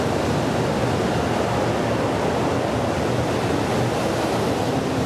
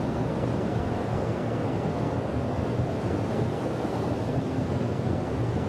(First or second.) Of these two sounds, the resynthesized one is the second